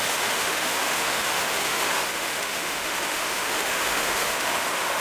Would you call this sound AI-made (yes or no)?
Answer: yes